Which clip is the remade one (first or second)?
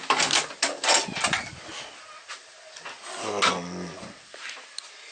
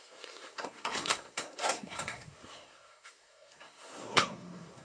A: second